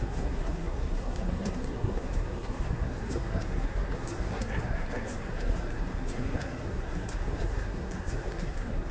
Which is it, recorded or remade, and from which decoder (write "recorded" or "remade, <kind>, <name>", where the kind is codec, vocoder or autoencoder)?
remade, codec, SNAC